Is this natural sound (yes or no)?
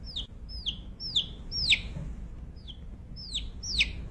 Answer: yes